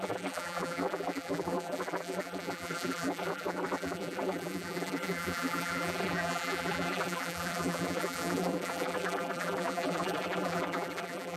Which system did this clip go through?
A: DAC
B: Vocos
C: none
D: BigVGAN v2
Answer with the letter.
D